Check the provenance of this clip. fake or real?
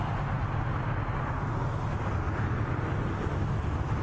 real